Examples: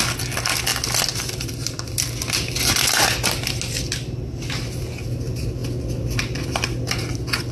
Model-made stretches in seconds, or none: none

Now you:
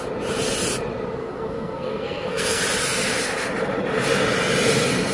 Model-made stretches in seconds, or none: 1.2-2.6 (codec, SNAC)